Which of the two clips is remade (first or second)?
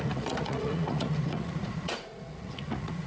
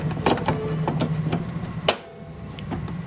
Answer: first